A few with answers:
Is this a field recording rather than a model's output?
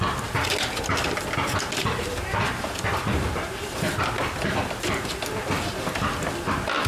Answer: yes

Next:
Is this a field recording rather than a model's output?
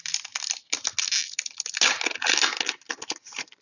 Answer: yes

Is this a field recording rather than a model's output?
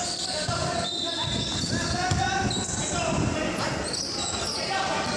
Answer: yes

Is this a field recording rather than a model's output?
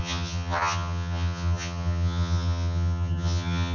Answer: no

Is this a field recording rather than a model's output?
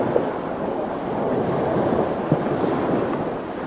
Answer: yes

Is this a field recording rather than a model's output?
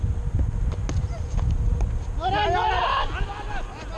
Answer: yes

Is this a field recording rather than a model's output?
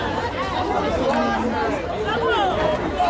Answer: yes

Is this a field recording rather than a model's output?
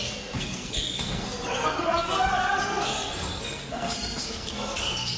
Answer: no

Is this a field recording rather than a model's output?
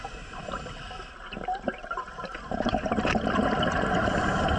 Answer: no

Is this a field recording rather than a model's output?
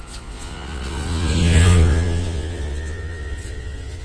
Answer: no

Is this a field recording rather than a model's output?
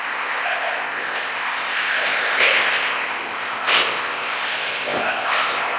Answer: no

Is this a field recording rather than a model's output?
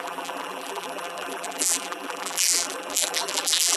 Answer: no